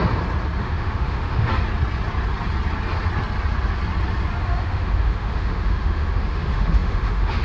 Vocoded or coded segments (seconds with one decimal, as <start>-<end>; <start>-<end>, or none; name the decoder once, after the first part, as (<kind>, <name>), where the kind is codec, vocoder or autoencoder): 0.6-1.5 (autoencoder, DAC-VAE); 4.4-7.4